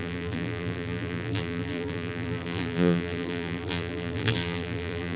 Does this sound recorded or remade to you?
remade